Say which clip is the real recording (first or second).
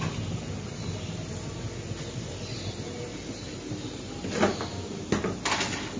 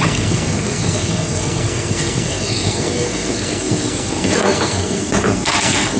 first